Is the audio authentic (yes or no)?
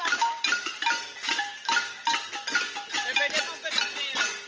yes